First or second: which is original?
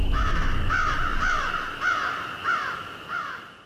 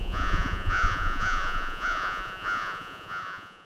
first